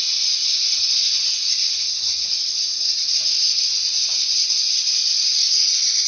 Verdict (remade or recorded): recorded